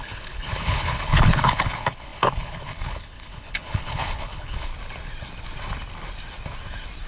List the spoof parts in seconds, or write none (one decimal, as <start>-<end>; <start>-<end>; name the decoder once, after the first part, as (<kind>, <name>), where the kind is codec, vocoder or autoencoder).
0.0-4.7 (codec, HILCodec)